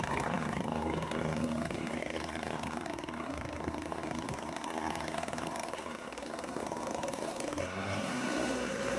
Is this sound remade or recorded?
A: remade